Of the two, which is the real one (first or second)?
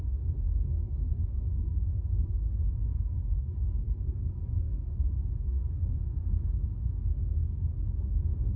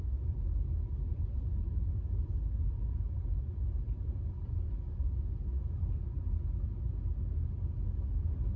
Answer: second